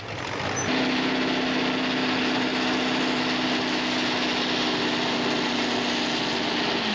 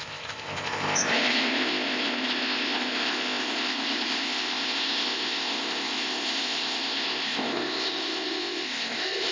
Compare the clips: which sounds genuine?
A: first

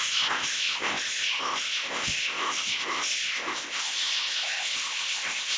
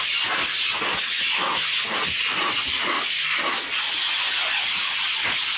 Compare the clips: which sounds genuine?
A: second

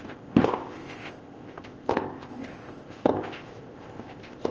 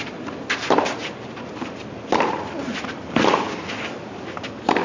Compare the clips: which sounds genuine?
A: second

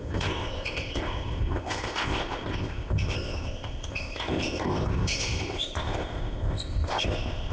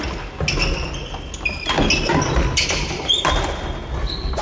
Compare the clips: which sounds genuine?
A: second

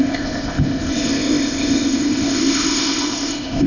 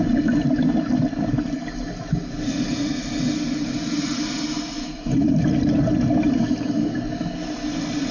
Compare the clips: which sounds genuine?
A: second